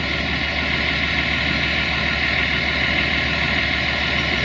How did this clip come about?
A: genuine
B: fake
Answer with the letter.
A